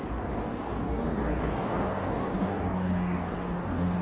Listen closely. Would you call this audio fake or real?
fake